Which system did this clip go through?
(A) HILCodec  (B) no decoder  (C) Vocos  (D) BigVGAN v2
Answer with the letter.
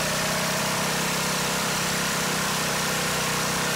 D